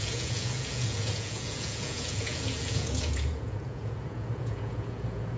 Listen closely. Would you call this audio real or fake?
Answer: fake